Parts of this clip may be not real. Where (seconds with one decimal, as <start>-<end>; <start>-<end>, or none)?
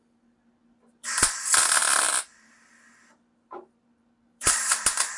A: 0.6-1.4; 1.8-5.2